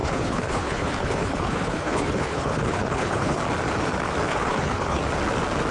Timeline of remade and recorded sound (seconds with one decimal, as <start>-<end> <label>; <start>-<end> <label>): 0.0-3.4 remade; 3.4-4.3 recorded; 4.3-5.0 remade; 5.0-5.7 recorded